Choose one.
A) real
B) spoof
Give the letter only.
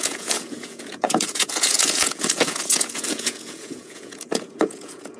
B